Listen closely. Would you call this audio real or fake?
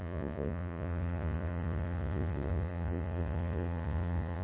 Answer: fake